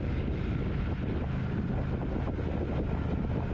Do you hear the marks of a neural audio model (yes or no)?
no